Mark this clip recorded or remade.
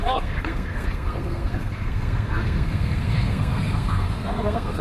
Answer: remade